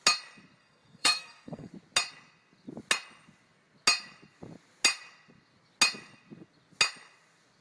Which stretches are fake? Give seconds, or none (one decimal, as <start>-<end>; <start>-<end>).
0.6-1.7